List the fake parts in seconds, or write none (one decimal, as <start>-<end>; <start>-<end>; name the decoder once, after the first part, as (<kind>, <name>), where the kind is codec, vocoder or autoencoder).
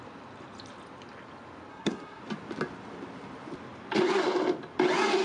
1.7-2.2 (codec, SNAC)